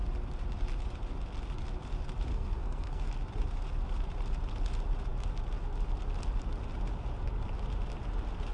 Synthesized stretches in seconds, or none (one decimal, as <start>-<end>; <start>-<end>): 2.3-3.1